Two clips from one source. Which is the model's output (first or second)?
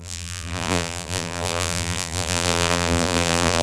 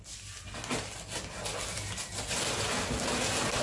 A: first